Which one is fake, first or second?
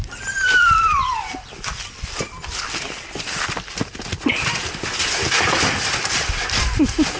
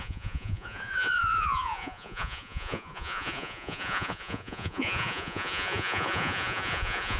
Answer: second